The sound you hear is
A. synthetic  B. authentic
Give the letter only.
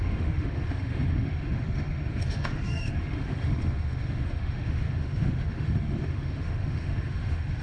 A